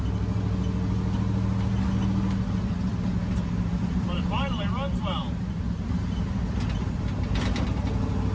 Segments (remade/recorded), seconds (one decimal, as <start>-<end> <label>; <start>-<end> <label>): 0.0-5.2 recorded; 5.2-5.9 remade; 5.9-8.3 recorded

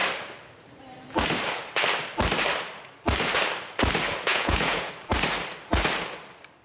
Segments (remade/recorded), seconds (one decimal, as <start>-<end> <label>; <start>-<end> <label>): 0.0-4.3 recorded; 4.3-4.9 remade; 4.9-6.6 recorded

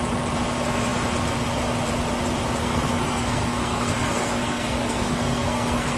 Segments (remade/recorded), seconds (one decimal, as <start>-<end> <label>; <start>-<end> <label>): 0.0-2.6 recorded; 2.6-6.0 remade

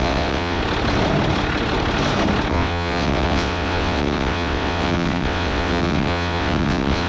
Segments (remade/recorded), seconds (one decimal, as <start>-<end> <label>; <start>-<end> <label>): 0.0-0.6 remade; 0.6-2.5 recorded; 2.5-7.1 remade

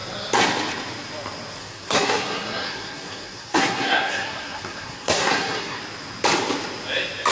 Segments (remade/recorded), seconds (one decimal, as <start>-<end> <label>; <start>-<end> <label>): 0.0-1.6 recorded; 1.6-5.8 remade; 5.8-7.3 recorded